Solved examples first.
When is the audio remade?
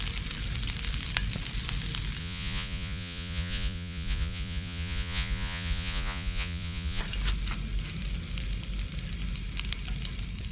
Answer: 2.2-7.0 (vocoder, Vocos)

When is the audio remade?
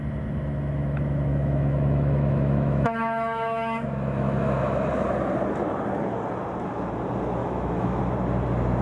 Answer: 1.3-4.9 (autoencoder, DAC-VAE); 7.4-8.0